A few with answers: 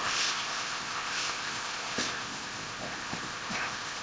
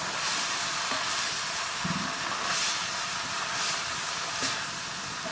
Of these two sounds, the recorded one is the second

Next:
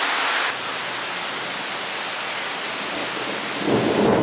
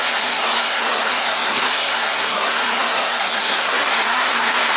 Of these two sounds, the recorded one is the first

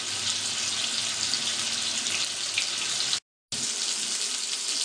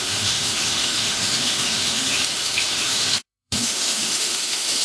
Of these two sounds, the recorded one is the first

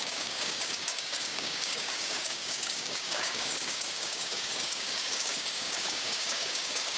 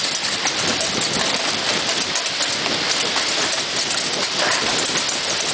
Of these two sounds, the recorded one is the second